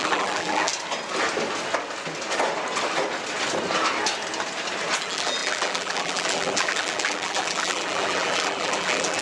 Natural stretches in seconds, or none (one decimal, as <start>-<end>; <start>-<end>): 0.7-5.0